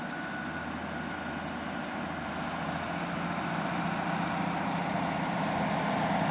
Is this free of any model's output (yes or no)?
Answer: yes